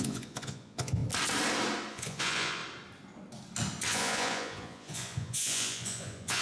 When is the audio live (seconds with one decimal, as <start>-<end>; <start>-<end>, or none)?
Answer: 1.0-1.9; 2.6-3.9